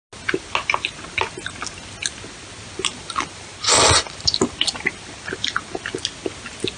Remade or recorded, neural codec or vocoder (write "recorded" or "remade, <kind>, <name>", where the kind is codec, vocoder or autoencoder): recorded